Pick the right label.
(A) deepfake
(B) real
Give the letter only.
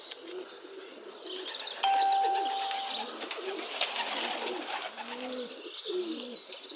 B